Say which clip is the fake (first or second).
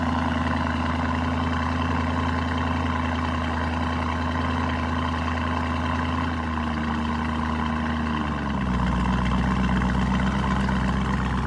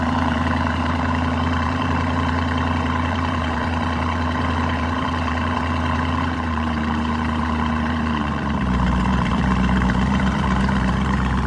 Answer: second